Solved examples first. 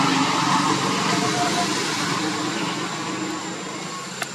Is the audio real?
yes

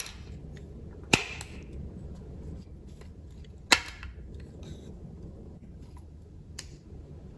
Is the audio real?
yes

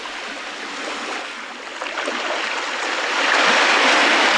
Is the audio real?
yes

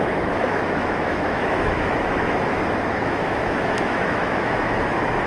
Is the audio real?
no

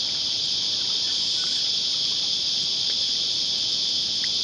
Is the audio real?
yes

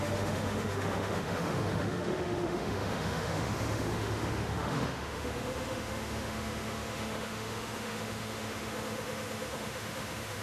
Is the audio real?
no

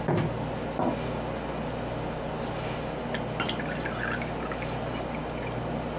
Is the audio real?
yes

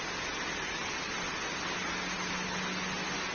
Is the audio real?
yes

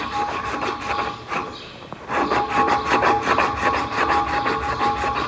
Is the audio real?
yes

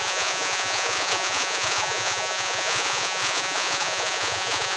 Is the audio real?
no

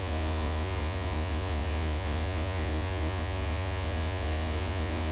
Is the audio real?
no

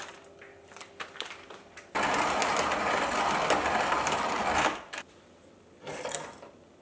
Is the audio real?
yes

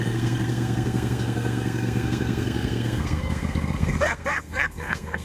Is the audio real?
no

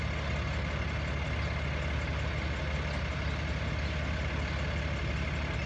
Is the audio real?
yes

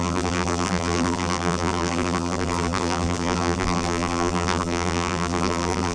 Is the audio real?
no